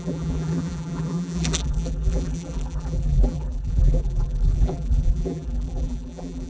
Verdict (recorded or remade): remade